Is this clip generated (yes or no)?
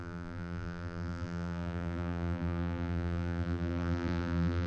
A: yes